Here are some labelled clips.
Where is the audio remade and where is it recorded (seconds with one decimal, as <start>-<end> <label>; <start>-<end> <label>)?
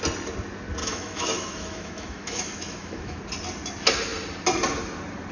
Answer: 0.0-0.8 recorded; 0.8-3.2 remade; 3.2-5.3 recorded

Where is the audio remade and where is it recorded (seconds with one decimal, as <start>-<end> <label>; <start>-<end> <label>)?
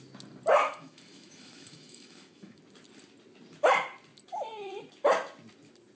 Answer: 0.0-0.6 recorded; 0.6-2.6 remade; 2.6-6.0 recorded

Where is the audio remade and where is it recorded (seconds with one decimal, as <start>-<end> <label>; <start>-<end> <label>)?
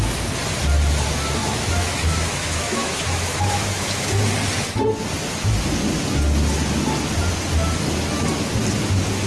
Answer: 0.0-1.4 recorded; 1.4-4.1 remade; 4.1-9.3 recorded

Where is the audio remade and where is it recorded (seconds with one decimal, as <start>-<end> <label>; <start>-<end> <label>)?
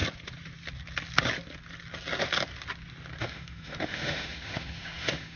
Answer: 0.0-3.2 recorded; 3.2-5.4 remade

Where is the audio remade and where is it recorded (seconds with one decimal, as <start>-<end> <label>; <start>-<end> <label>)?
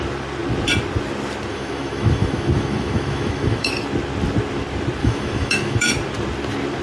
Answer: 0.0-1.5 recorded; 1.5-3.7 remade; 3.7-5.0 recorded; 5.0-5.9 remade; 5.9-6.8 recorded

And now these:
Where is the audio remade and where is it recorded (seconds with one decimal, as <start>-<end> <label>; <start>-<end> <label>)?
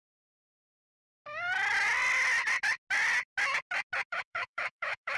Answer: 0.0-1.0 remade; 1.0-4.1 recorded; 4.1-5.2 remade